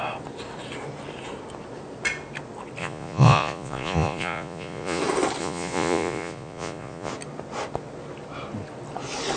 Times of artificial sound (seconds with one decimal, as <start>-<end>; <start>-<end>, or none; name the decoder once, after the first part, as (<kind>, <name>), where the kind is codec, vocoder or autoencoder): 2.8-5.0 (vocoder, Vocos); 5.4-7.1